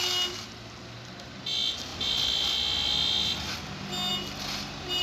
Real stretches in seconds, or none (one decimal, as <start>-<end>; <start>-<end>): 0.0-1.9; 3.5-5.0